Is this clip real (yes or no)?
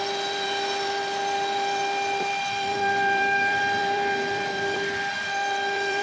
no